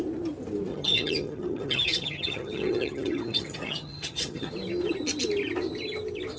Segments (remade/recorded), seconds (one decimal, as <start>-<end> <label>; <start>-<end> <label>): 0.0-0.7 recorded; 0.7-4.5 remade; 4.5-6.4 recorded